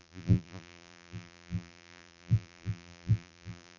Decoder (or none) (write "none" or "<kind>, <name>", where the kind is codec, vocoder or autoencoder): vocoder, BigVGAN v2